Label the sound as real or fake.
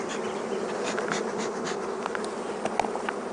real